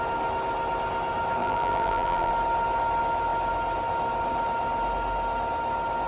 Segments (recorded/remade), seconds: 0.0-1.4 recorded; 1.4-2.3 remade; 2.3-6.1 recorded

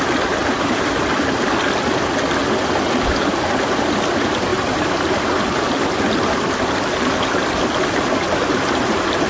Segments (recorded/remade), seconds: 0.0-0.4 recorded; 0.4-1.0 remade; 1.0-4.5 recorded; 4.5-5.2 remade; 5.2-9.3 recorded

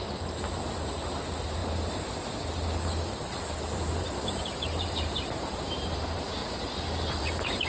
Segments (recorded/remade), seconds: 0.0-1.6 remade; 1.6-3.8 recorded; 3.8-6.4 remade; 6.4-7.2 recorded; 7.2-7.7 remade